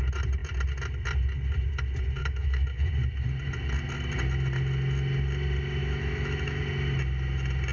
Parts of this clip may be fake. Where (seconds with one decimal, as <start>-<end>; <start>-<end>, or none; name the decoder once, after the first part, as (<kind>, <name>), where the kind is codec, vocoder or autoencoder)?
2.2-2.9 (autoencoder, DAC-VAE); 5.8-6.6